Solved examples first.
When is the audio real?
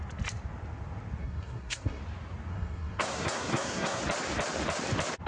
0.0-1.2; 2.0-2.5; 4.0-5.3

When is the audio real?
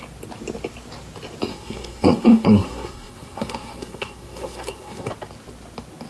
0.0-1.5; 5.1-6.1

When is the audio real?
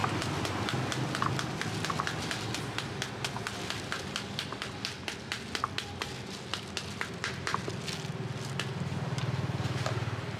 0.0-10.4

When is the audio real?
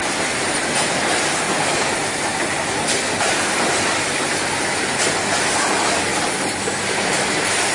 0.0-7.7